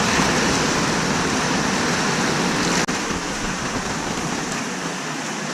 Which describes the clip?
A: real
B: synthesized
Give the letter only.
A